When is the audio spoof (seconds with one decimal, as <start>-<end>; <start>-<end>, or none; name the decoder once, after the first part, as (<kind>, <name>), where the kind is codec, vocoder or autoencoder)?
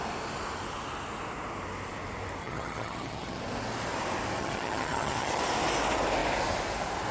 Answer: 2.4-3.4 (vocoder, HiFi-GAN); 4.4-5.4